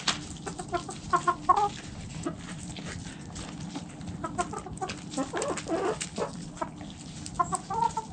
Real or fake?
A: real